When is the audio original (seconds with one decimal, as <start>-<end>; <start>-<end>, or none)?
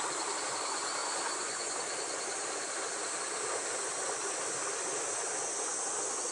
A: 0.0-1.0; 1.8-6.3